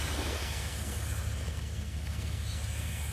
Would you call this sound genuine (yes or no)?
no